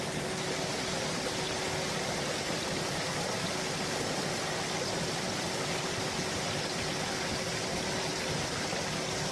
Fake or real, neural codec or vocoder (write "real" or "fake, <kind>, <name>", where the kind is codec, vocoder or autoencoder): real